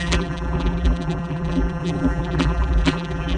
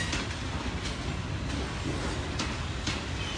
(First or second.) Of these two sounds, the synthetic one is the first